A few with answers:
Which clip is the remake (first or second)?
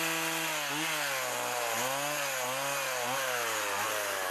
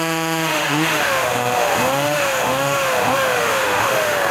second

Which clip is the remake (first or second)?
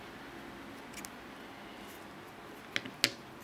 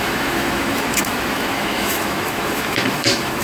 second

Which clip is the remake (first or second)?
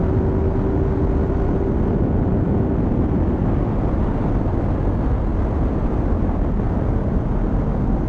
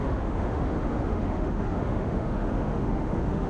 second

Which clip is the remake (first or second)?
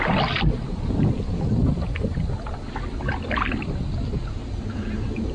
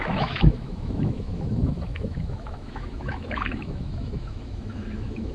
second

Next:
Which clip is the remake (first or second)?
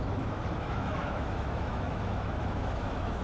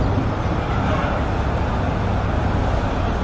first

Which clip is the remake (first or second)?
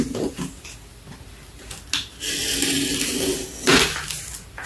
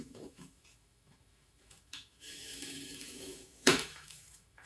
second